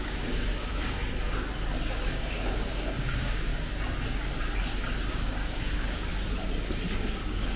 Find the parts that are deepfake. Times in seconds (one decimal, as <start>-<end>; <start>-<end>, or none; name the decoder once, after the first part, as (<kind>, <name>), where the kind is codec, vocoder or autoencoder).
0.0-1.0 (codec, DAC); 2.1-3.5; 5.1-6.1; 6.9-7.6